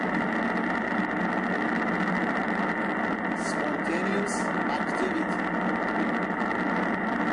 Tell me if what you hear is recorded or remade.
recorded